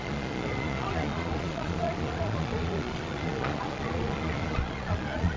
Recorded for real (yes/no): no